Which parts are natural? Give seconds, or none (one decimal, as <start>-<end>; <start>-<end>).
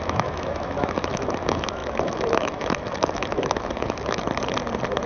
4.2-5.1